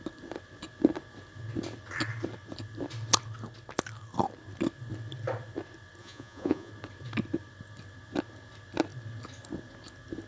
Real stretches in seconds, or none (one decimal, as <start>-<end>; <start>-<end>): 0.0-6.0; 6.7-10.3